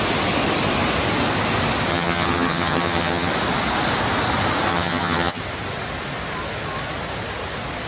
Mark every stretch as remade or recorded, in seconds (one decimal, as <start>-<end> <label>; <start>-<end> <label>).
0.0-1.9 recorded; 1.9-3.3 remade; 3.3-4.7 recorded; 4.7-5.4 remade; 5.4-7.9 recorded